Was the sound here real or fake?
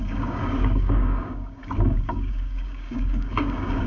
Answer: fake